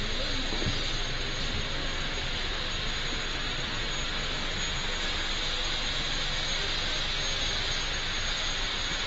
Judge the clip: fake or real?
real